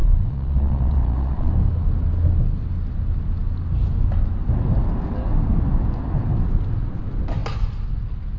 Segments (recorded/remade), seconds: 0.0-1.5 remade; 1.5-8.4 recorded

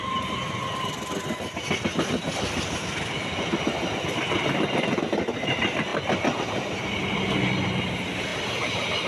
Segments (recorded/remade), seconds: 0.0-9.1 recorded

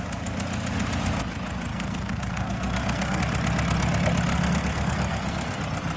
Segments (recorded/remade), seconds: 0.0-1.7 recorded; 1.7-3.2 remade; 3.2-4.3 recorded; 4.3-5.6 remade; 5.6-6.0 recorded

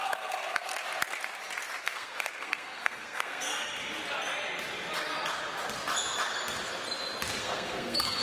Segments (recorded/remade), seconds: 0.0-0.7 remade; 0.7-1.8 recorded; 1.8-3.5 remade; 3.5-7.4 recorded; 7.4-8.2 remade

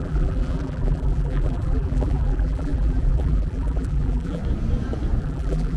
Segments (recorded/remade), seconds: 0.0-4.4 remade; 4.4-5.2 recorded; 5.2-5.8 remade

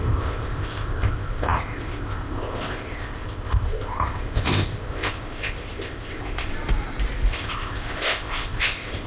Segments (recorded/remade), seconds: 0.0-6.5 remade; 6.5-7.3 recorded; 7.3-9.1 remade